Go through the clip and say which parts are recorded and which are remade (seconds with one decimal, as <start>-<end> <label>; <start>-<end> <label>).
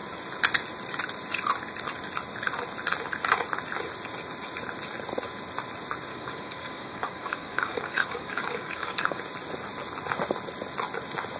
0.0-6.1 recorded; 6.1-9.2 remade; 9.2-11.4 recorded